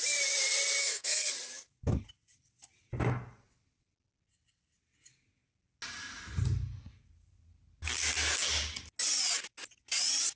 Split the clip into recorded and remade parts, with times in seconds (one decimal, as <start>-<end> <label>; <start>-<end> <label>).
0.0-0.8 recorded; 0.8-1.3 remade; 1.3-10.3 recorded